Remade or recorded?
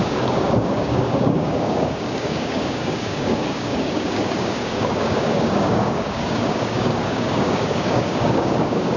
remade